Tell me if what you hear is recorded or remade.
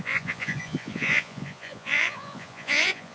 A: remade